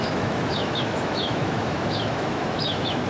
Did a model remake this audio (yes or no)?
yes